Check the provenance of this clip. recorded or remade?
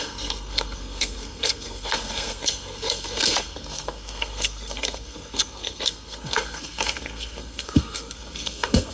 remade